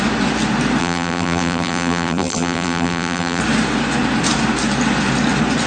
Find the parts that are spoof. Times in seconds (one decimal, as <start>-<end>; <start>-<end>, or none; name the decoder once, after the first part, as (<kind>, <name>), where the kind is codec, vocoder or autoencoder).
0.8-3.4 (vocoder, BigVGAN v2)